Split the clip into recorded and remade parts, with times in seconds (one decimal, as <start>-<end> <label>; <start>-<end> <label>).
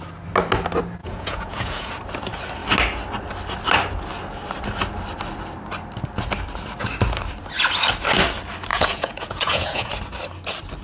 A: 0.0-1.0 recorded; 1.0-1.9 remade; 1.9-8.7 recorded; 8.7-9.9 remade; 9.9-10.8 recorded